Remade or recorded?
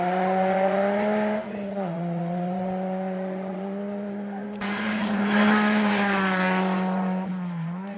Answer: remade